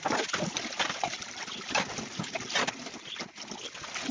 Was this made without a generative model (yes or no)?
yes